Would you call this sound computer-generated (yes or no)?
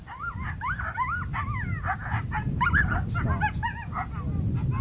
no